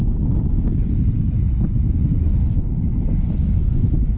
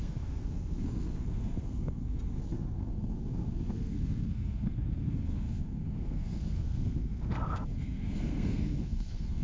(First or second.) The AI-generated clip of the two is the second